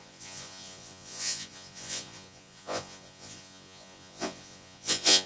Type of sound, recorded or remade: remade